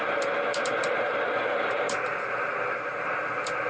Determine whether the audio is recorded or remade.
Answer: remade